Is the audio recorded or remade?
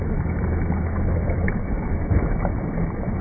remade